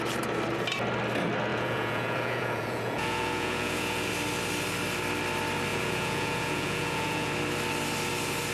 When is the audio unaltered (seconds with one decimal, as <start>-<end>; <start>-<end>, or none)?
0.0-1.5; 4.1-5.7; 7.3-8.5